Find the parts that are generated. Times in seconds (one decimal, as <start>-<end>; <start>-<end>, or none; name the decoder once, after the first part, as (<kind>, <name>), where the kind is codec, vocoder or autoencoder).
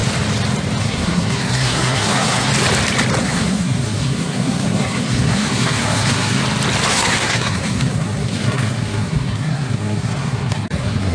0.8-2.5 (codec, SNAC); 3.2-6.4; 6.9-11.1